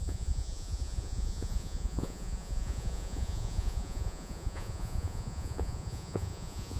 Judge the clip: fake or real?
fake